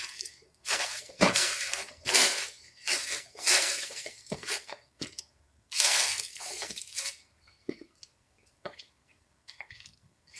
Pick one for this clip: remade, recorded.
remade